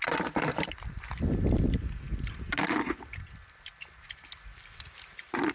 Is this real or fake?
real